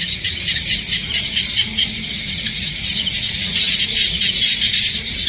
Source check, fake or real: fake